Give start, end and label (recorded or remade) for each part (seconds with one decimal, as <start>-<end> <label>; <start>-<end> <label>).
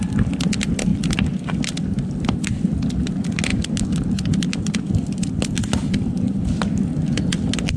0.0-7.8 recorded